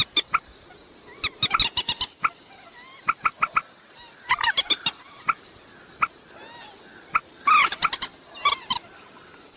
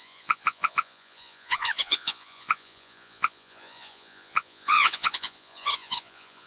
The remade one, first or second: second